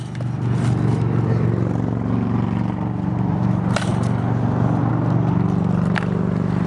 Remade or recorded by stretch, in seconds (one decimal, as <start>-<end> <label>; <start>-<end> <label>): 0.0-6.7 recorded